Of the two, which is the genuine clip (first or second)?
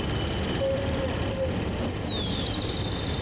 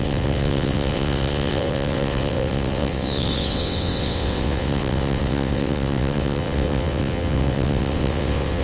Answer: first